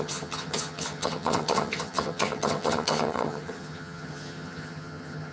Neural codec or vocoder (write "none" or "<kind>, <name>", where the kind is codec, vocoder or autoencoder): vocoder, HiFi-GAN